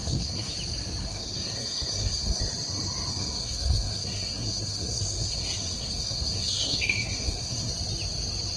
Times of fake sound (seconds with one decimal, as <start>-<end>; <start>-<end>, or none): 0.0-0.5; 1.0-2.4; 3.1-7.7